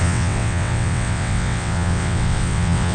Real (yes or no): no